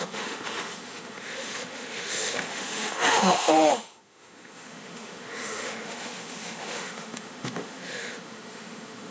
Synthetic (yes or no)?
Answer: yes